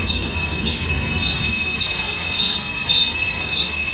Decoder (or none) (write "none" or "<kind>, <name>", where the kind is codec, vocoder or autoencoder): codec, SNAC